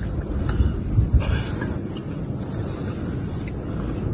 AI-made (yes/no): no